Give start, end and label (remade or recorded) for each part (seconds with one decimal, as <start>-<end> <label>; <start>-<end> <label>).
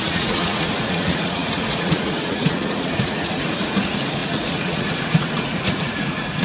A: 0.0-6.4 remade